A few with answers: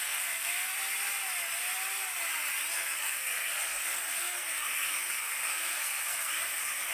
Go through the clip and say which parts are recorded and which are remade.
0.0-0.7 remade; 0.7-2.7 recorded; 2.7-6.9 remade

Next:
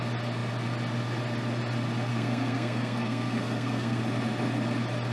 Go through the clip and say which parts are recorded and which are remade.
0.0-2.1 recorded; 2.1-4.0 remade; 4.0-5.1 recorded

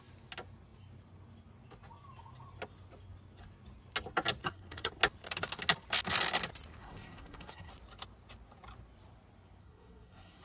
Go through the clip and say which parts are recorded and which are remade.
0.0-4.4 recorded; 4.4-4.9 remade; 4.9-6.8 recorded; 6.8-7.7 remade; 7.7-9.6 recorded; 9.6-10.4 remade

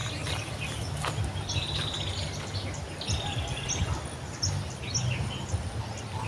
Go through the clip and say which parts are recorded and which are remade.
0.0-6.3 recorded